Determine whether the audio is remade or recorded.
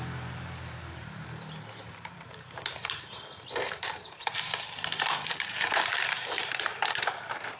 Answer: remade